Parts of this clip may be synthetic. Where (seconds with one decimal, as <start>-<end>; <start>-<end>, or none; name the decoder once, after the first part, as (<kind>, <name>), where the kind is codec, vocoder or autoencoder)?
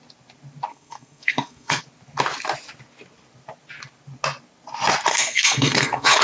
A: 0.7-1.8 (codec, SNAC); 5.1-6.2